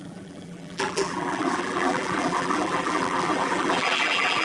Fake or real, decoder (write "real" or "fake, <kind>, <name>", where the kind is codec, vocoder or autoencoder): fake, vocoder, BigVGAN v2